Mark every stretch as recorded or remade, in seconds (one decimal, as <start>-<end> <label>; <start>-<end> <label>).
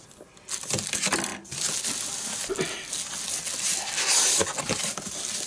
0.0-5.5 recorded